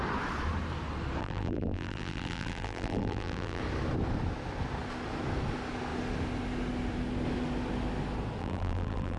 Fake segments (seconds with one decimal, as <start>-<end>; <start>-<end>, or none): 1.2-3.6; 8.4-9.2